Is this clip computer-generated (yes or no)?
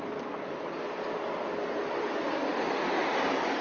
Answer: no